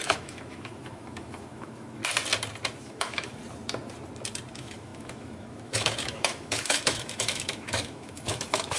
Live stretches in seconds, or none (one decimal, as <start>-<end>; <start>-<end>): 2.0-2.8; 3.4-4.5